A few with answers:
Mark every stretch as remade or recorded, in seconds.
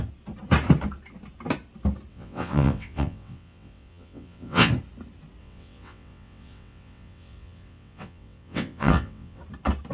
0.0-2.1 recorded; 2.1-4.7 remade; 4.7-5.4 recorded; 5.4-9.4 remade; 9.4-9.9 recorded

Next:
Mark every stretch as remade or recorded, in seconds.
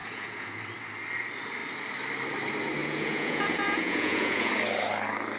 0.0-0.6 remade; 0.6-2.8 recorded; 2.8-4.5 remade; 4.5-5.4 recorded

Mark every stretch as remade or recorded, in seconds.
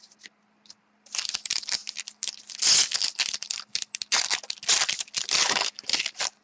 0.0-6.4 recorded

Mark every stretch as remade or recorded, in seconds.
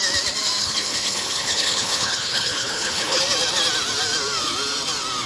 0.0-0.6 recorded; 0.6-3.2 remade; 3.2-5.3 recorded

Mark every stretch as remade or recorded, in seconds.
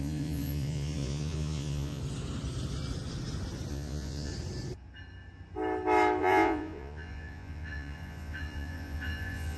0.0-2.0 remade; 2.0-3.7 recorded; 3.7-4.3 remade; 4.3-6.2 recorded; 6.2-9.6 remade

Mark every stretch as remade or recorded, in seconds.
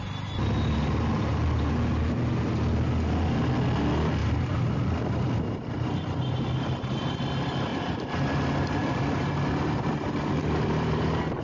0.0-4.2 recorded; 4.2-6.5 remade; 6.5-7.7 recorded; 7.7-11.4 remade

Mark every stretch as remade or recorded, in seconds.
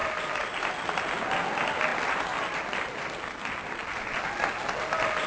0.0-0.6 remade; 0.6-1.9 recorded; 1.9-2.6 remade; 2.6-3.8 recorded; 3.8-4.3 remade; 4.3-5.3 recorded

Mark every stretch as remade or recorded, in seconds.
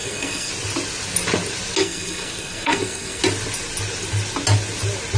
0.0-0.5 remade; 0.5-1.8 recorded; 1.8-3.2 remade; 3.2-5.2 recorded